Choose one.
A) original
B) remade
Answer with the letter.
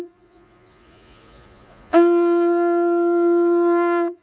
B